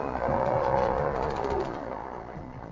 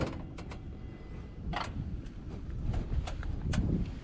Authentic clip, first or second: second